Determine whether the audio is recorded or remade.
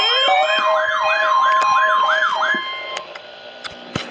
remade